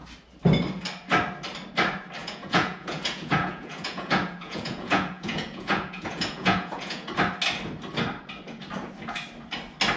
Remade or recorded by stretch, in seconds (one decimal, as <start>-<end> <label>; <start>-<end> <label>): 0.0-2.2 recorded; 2.2-7.1 remade; 7.1-10.0 recorded